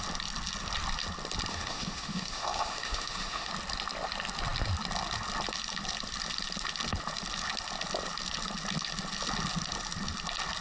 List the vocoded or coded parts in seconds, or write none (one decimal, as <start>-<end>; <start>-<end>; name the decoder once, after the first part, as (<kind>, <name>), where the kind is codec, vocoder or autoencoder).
1.5-3.5 (autoencoder, DAC-VAE)